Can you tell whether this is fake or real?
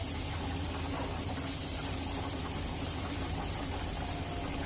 real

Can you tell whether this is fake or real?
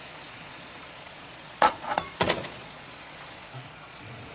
fake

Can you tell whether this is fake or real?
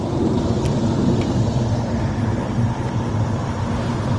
real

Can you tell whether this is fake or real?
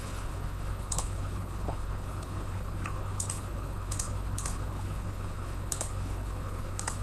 fake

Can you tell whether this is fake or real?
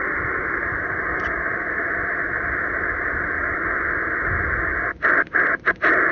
real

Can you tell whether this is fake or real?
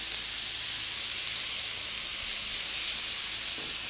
real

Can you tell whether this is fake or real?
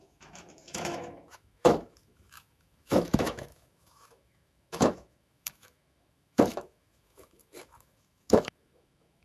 fake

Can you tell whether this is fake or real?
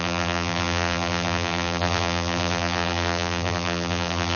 fake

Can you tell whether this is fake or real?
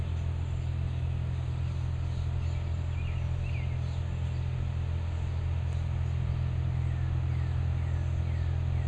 real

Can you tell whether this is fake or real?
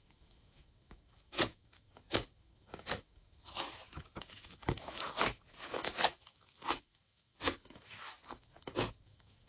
fake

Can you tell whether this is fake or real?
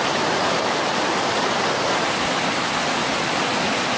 real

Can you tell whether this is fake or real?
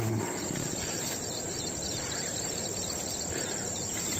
real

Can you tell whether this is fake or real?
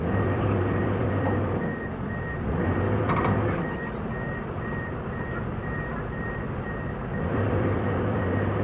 fake